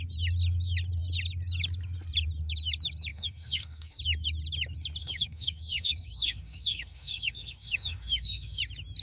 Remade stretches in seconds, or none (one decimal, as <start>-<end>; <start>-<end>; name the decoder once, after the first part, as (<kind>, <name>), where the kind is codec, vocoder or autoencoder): 3.1-4.0 (autoencoder, DAC-VAE); 5.0-8.6